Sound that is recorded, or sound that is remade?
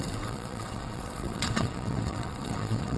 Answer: remade